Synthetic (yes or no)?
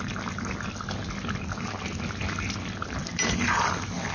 no